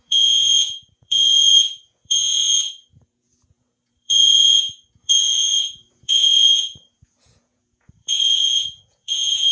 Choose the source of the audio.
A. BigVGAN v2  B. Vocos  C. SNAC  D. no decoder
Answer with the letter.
B